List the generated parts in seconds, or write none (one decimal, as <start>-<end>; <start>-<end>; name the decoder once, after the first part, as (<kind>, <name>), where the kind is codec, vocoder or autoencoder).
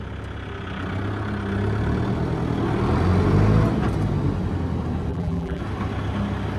5.1-5.6 (vocoder, BigVGAN v2)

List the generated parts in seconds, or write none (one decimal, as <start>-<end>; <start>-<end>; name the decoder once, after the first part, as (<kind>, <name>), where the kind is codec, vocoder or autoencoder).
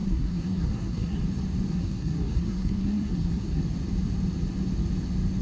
0.0-1.2 (codec, SNAC); 1.7-3.6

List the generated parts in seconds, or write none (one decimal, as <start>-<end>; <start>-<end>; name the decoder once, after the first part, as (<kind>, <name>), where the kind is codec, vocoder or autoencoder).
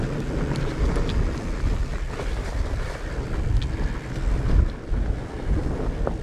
none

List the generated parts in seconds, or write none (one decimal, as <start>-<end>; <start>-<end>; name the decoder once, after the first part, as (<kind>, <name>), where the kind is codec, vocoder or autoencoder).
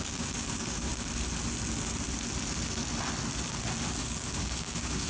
0.0-0.9 (codec, DAC); 4.0-5.1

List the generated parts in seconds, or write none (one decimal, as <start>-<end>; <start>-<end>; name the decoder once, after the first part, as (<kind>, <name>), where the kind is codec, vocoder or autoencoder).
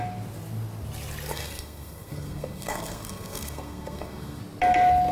1.3-4.4 (codec, SNAC)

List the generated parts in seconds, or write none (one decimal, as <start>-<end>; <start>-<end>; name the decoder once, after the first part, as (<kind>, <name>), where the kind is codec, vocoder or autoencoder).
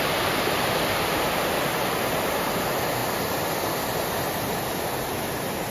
none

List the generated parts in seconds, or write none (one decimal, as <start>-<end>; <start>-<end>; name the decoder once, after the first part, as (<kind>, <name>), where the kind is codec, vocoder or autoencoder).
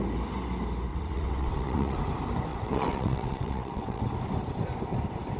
0.9-2.0 (vocoder, WaveNeXt); 2.5-4.0